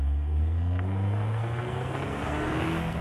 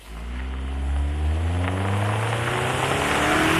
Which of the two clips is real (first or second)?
second